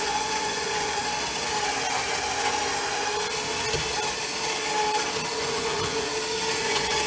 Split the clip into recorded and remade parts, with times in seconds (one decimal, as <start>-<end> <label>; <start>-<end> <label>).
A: 0.0-1.0 remade; 1.0-5.3 recorded; 5.3-6.1 remade; 6.1-6.6 recorded; 6.6-7.1 remade